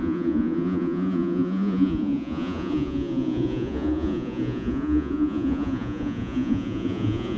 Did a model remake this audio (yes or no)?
yes